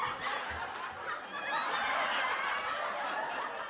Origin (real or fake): real